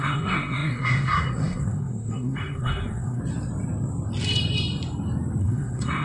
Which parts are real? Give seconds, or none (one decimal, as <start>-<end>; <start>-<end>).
3.2-5.4